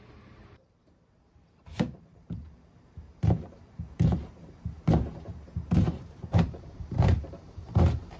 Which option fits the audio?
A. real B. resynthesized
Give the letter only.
B